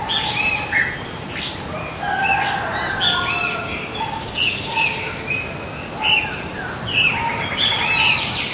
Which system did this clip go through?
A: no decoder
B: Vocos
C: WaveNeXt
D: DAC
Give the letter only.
A